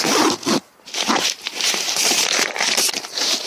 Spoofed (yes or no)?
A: no